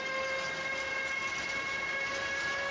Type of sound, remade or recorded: recorded